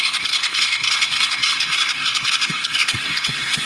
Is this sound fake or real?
fake